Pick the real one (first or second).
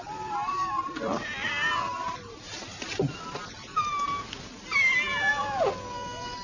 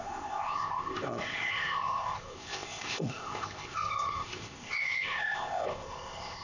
first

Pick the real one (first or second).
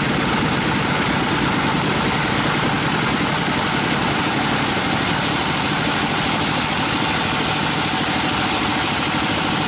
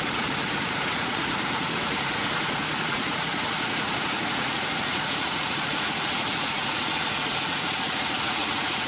first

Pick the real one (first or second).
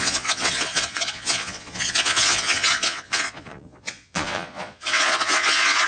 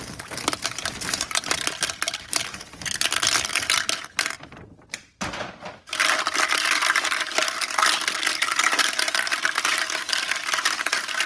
second